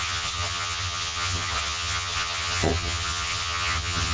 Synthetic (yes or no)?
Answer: yes